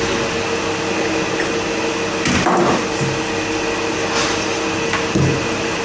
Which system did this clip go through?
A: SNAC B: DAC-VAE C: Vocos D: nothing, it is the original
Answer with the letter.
D